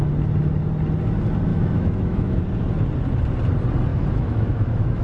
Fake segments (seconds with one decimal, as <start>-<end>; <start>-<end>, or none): 1.5-2.4; 3.9-5.0